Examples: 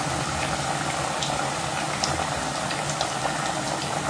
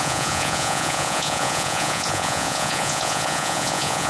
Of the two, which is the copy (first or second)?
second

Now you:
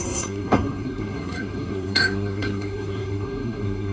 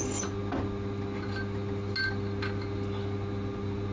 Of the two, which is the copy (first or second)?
first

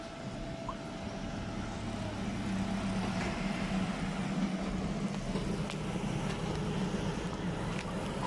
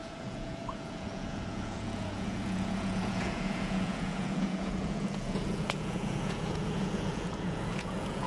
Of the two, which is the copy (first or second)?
second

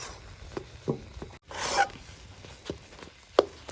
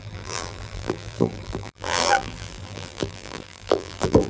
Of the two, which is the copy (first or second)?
second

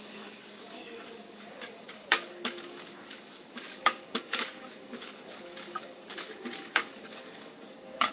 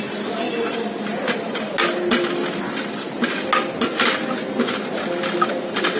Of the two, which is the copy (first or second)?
first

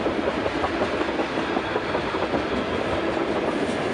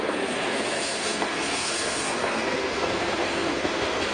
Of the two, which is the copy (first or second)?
second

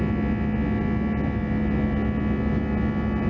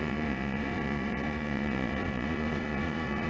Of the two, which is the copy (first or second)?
second